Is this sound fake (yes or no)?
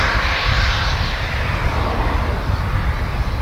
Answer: no